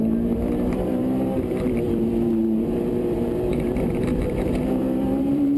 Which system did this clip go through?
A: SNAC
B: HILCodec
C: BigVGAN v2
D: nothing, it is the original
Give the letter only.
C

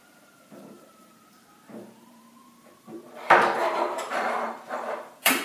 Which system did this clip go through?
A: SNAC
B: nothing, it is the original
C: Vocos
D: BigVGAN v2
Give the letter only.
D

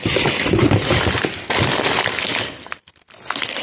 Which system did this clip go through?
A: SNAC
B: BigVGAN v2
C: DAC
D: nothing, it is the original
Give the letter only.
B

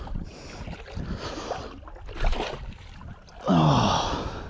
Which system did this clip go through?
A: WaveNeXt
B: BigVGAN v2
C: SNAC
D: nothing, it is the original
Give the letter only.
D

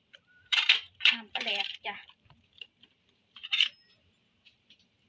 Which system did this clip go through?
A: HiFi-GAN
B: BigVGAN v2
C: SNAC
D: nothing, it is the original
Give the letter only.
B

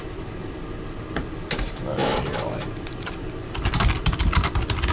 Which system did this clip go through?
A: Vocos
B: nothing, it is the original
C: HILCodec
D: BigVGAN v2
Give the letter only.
D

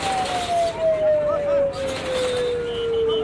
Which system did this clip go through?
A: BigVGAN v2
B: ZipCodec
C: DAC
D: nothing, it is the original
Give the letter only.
D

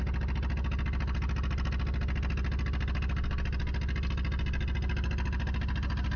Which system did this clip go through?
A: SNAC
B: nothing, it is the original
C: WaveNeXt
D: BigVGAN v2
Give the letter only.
B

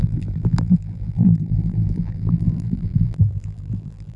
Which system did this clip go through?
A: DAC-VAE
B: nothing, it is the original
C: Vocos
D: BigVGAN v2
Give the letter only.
D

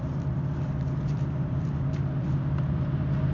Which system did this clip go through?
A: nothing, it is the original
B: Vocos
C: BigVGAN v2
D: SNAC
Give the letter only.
C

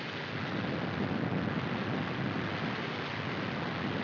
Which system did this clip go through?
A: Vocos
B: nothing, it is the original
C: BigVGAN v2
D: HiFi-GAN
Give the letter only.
B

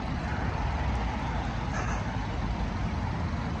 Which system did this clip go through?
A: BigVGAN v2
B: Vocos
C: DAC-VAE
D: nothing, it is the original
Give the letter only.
D